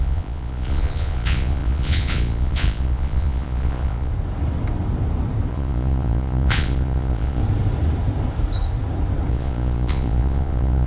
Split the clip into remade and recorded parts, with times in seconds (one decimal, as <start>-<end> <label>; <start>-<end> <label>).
0.0-4.1 remade; 4.1-5.5 recorded; 5.5-7.4 remade; 7.4-9.3 recorded; 9.3-10.9 remade